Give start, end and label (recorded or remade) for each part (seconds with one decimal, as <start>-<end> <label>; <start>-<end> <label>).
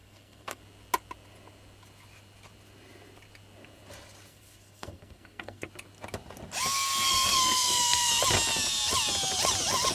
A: 0.0-0.6 remade; 0.6-4.3 recorded; 4.3-5.7 remade; 5.7-7.1 recorded; 7.1-8.1 remade; 8.1-9.9 recorded